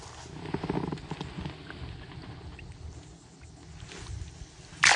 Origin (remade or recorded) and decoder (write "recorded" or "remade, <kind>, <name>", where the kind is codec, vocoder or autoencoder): recorded